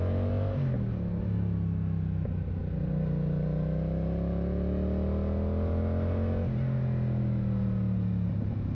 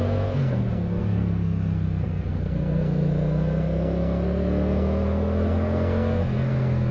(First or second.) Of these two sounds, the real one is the first